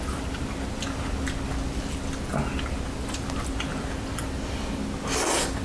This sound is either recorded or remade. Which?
recorded